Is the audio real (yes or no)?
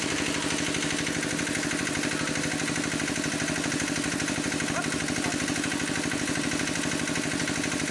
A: yes